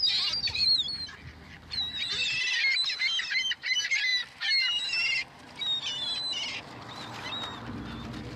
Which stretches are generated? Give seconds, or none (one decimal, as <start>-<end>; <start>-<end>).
none